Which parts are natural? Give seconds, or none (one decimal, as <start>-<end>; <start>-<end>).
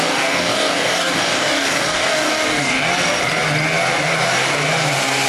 2.8-5.3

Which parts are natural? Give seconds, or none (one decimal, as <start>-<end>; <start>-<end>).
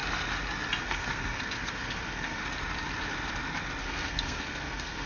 0.0-0.8; 2.4-3.8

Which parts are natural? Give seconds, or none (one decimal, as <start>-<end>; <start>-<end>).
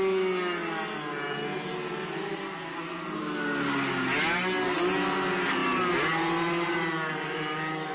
0.0-7.9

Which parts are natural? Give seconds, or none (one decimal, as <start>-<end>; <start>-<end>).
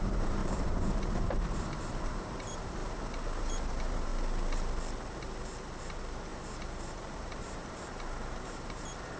2.8-3.4; 4.1-5.8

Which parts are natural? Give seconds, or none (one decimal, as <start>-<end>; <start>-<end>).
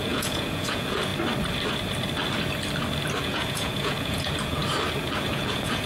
1.1-3.2; 4.6-5.3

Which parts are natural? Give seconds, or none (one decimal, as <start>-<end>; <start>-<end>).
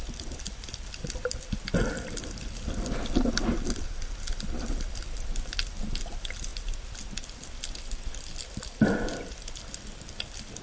0.0-10.6